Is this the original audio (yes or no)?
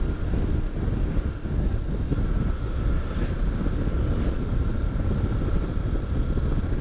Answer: yes